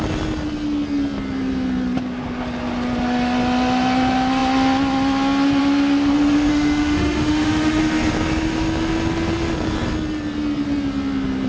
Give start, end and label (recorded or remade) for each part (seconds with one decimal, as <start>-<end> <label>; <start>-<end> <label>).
0.0-6.5 recorded; 6.5-7.8 remade; 7.8-11.5 recorded